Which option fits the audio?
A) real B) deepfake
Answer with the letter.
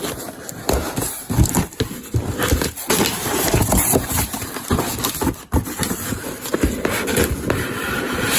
A